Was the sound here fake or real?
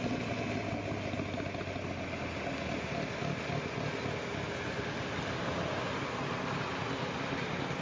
real